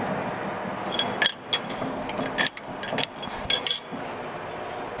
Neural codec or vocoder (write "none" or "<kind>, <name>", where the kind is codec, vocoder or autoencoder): none